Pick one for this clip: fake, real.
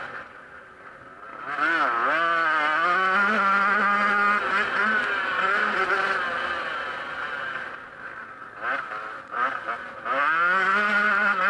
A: real